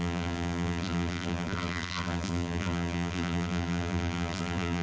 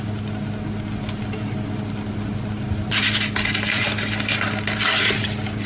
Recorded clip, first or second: second